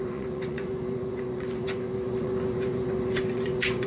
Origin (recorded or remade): remade